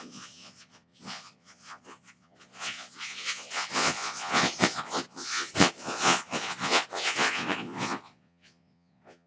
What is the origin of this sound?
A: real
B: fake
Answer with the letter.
B